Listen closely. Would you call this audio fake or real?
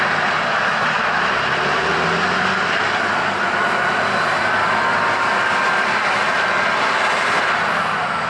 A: real